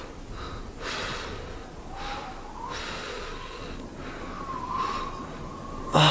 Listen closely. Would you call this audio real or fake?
real